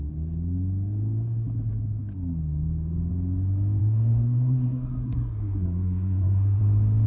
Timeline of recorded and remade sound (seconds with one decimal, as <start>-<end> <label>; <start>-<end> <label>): 0.0-3.8 recorded; 3.8-6.6 remade; 6.6-7.1 recorded

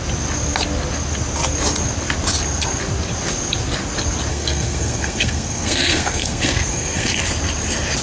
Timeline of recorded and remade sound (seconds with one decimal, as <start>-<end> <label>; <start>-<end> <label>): 0.0-4.3 recorded; 4.3-7.2 remade; 7.2-8.0 recorded